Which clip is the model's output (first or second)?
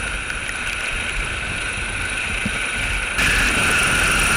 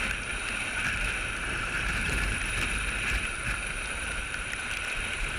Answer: second